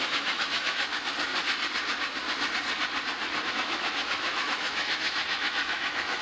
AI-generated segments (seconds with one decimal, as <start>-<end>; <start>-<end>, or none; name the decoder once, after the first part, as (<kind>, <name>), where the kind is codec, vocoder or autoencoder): 0.0-1.3 (autoencoder, DAC-VAE); 3.5-6.2

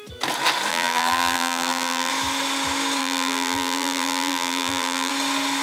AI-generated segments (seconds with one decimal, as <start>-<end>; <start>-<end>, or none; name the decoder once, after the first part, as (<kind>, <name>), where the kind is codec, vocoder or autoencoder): 0.7-2.1 (vocoder, BigVGAN v2); 3.0-5.1

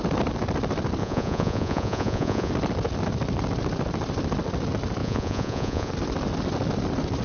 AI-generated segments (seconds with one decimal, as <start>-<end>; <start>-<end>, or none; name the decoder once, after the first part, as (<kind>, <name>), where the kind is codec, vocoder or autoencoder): 1.0-2.5 (vocoder, Vocos); 5.0-5.9